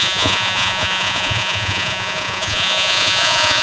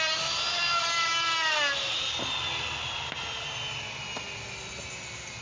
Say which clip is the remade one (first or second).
first